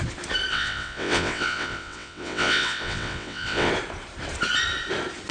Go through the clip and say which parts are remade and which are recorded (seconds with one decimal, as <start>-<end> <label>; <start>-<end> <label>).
0.0-0.5 recorded; 0.5-3.7 remade; 3.7-5.3 recorded